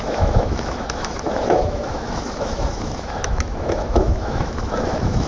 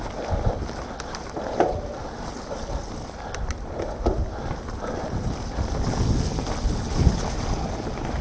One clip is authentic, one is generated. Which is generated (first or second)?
first